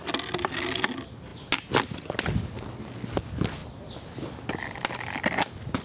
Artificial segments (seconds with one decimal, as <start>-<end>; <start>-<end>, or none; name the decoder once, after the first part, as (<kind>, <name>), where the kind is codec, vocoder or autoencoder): none